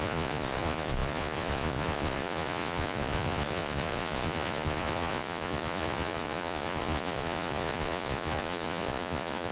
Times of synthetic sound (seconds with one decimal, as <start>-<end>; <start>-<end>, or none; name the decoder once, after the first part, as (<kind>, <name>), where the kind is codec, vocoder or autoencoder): 0.0-9.5 (vocoder, Vocos)